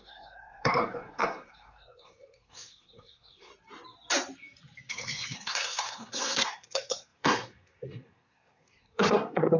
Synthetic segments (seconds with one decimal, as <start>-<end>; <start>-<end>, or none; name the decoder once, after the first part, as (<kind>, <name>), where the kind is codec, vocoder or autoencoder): 0.0-3.5 (codec, SNAC); 4.9-9.6

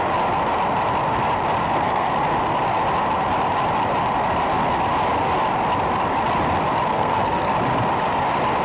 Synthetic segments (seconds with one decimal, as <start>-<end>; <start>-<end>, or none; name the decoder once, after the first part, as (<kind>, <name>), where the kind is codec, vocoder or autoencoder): 1.6-2.1 (codec, SNAC); 6.9-7.5